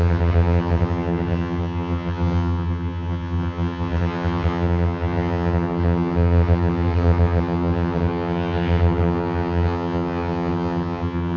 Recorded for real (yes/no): no